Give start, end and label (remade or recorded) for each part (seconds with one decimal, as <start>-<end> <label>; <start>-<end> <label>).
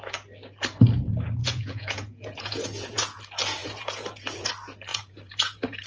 0.0-1.4 recorded; 1.4-3.2 remade; 3.2-3.6 recorded; 3.6-4.5 remade; 4.5-4.9 recorded; 4.9-5.9 remade